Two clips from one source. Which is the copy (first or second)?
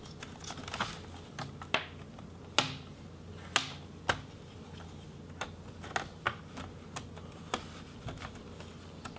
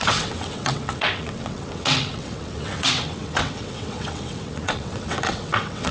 second